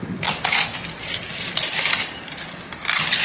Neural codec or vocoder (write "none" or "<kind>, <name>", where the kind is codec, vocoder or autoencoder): none